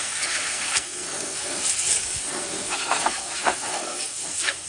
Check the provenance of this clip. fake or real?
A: fake